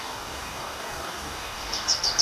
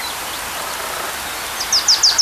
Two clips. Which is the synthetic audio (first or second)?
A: first